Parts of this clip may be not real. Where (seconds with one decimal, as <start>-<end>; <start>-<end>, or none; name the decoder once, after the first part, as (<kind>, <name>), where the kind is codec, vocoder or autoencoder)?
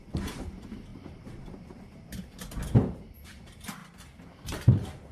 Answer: 0.0-3.8 (vocoder, BigVGAN v2)